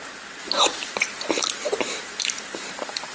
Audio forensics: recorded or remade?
remade